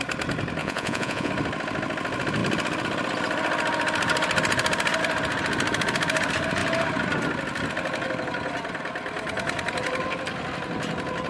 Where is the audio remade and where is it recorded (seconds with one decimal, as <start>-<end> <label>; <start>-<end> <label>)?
0.0-0.6 recorded; 0.6-1.3 remade; 1.3-11.3 recorded